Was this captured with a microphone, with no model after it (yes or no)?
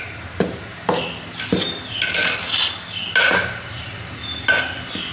yes